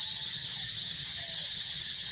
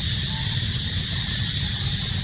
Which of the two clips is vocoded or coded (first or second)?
first